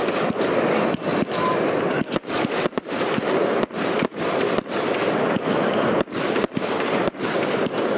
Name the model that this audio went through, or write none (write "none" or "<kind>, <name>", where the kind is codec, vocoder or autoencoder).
none